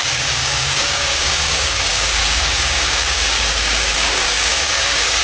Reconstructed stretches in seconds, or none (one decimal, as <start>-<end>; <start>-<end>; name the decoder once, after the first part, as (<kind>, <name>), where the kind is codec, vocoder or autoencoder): 0.0-5.2 (codec, DAC)